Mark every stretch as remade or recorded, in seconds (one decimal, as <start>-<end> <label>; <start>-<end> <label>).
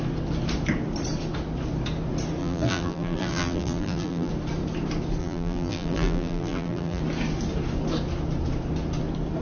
0.0-2.4 recorded; 2.4-4.3 remade; 4.3-5.2 recorded; 5.2-7.0 remade; 7.0-9.4 recorded